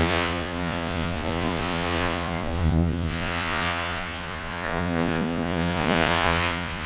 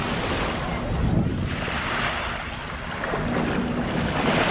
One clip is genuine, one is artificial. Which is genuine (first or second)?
second